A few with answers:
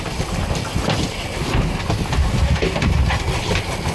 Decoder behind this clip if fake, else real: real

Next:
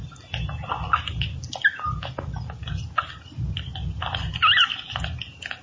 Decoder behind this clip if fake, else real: real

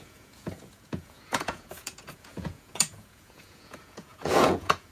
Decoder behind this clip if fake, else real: fake, vocoder, Vocos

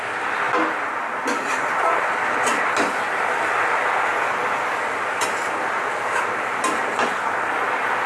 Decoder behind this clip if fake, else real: real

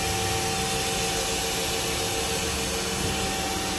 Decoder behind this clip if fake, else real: real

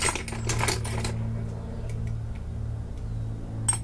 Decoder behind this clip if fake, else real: real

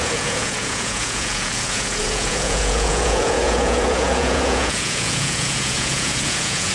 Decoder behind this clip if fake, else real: fake, vocoder, Vocos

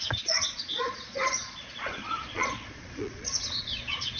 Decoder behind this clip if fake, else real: fake, vocoder, Vocos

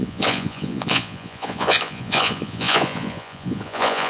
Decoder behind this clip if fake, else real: fake, vocoder, Vocos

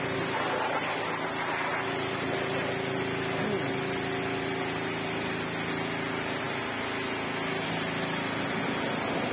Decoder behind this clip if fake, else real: real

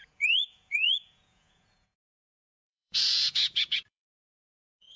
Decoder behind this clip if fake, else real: fake, vocoder, Vocos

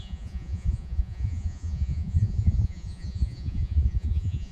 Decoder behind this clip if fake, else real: fake, vocoder, Vocos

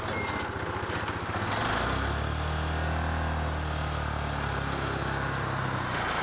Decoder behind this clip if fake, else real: real